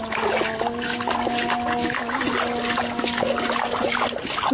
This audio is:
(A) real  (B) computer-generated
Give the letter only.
A